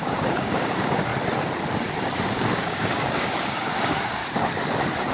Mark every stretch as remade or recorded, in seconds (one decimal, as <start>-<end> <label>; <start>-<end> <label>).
0.0-1.1 remade; 1.1-2.3 recorded; 2.3-4.2 remade; 4.2-5.1 recorded